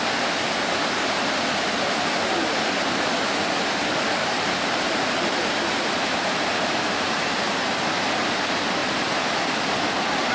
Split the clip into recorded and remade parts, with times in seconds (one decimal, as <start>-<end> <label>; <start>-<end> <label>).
0.0-4.2 recorded; 4.2-7.6 remade; 7.6-10.3 recorded